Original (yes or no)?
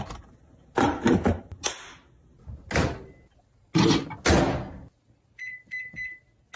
yes